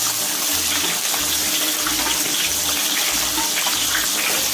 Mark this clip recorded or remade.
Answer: recorded